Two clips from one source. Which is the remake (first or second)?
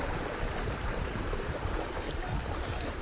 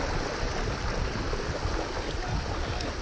first